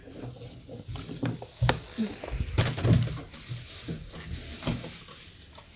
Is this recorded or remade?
recorded